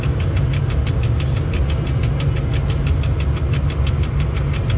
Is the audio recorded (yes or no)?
yes